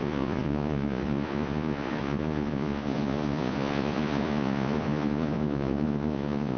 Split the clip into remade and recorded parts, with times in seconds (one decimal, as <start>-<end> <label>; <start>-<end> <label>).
0.0-6.6 remade